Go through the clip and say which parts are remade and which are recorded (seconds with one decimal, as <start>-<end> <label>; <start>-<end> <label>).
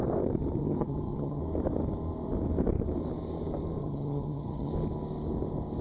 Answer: 0.0-0.6 recorded; 0.6-1.4 remade; 1.4-3.8 recorded; 3.8-4.7 remade; 4.7-5.8 recorded